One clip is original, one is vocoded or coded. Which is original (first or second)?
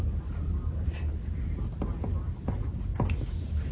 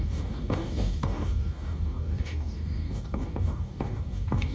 first